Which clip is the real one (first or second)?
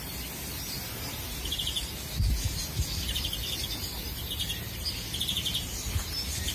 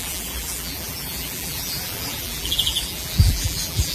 first